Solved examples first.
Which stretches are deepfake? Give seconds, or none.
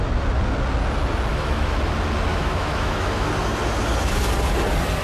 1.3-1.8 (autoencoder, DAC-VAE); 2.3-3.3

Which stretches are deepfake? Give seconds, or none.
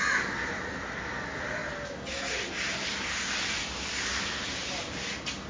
none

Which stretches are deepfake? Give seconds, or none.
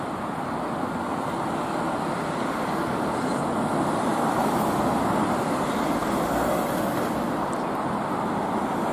none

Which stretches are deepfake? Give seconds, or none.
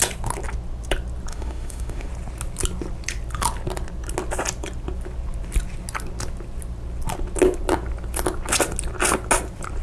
1.3-2.1 (autoencoder, DAC-VAE)